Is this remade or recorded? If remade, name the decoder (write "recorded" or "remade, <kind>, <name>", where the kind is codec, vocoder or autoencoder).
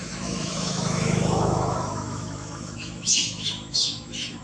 remade, autoencoder, DAC-VAE